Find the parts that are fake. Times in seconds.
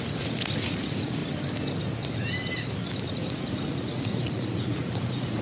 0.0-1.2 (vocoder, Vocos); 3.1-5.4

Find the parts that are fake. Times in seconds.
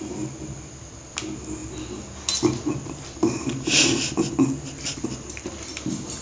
none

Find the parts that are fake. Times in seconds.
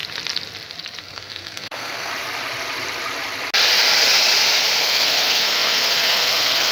1.0-2.1 (codec, SNAC); 4.8-6.7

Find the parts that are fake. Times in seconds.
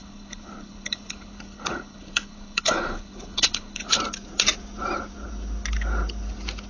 0.0-4.0 (codec, HILCodec)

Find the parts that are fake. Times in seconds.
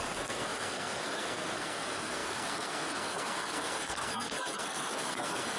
0.0-5.6 (codec, SNAC)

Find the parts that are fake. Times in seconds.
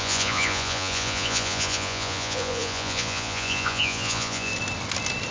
0.0-4.5 (vocoder, Vocos)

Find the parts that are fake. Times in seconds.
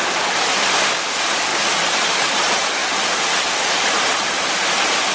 0.0-1.5 (vocoder, BigVGAN v2); 2.1-2.8; 4.1-5.1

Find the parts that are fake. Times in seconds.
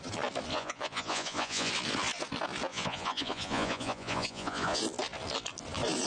0.5-1.7 (vocoder, Vocos); 2.7-4.8